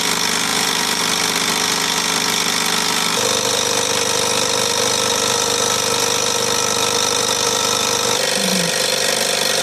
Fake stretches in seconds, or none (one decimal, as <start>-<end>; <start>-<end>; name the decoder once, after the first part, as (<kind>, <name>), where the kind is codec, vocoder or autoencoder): 0.5-1.0 (vocoder, BigVGAN v2)